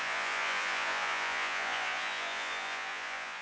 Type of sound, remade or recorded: remade